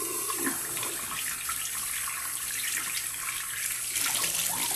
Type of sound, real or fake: real